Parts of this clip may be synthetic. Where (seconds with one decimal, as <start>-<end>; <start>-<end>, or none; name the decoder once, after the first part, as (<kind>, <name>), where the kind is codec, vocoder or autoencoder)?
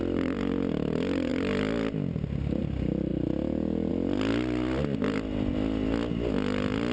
none